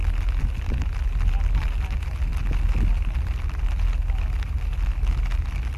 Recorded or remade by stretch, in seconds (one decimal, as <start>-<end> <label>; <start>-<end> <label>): 0.0-5.8 recorded